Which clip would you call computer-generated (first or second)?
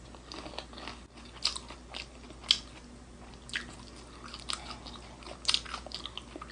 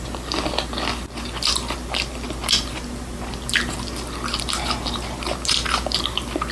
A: second